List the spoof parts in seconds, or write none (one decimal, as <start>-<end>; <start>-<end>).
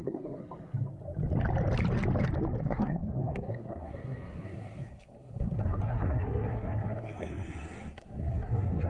0.0-0.4; 2.6-8.9